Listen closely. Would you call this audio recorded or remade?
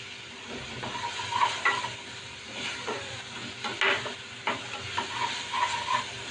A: recorded